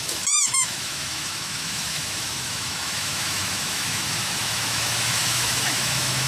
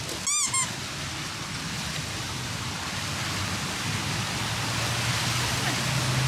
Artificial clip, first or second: first